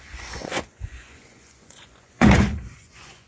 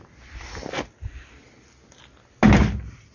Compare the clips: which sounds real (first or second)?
second